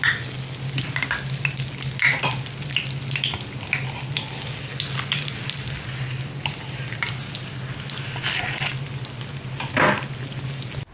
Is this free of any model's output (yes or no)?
yes